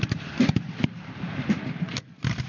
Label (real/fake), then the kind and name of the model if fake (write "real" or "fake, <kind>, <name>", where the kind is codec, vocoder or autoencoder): fake, vocoder, BigVGAN v2